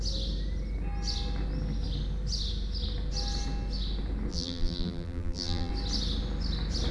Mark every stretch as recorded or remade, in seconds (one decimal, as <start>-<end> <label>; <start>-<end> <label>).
0.0-4.3 recorded; 4.3-5.7 remade; 5.7-6.9 recorded